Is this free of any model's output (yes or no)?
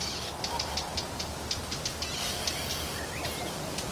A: yes